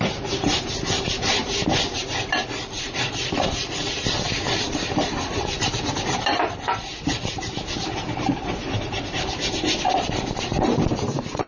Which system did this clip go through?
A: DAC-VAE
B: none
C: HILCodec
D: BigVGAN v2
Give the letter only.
D